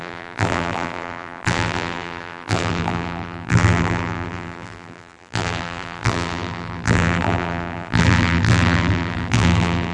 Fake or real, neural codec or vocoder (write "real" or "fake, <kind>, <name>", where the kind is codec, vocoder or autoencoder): fake, vocoder, BigVGAN v2